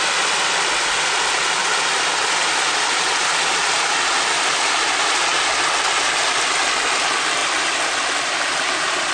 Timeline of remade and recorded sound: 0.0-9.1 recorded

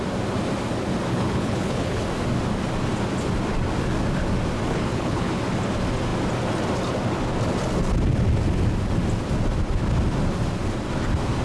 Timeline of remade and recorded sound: 0.0-1.1 recorded; 1.1-2.0 remade; 2.0-4.7 recorded; 4.7-5.3 remade; 5.3-11.4 recorded